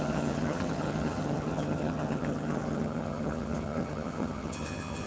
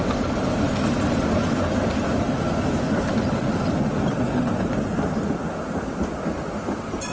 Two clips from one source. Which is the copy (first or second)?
first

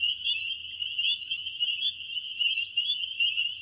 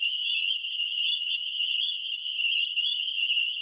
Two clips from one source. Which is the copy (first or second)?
second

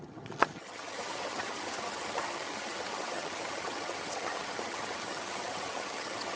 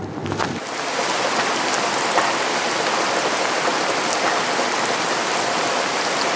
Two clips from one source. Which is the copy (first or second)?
first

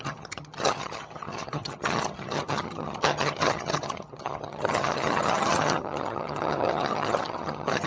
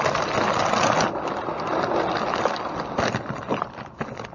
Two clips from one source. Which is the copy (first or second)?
first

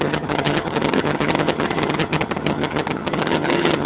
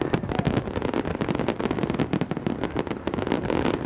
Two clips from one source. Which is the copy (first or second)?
first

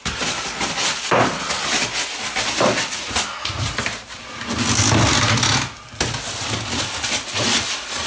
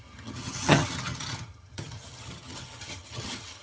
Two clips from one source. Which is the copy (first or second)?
second